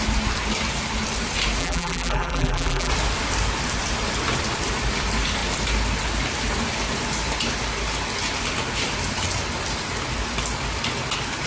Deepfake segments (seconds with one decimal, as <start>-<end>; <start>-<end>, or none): 1.6-2.9